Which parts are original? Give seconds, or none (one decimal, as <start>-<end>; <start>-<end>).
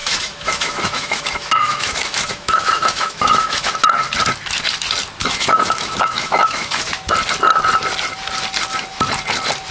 3.7-5.2; 7.0-9.7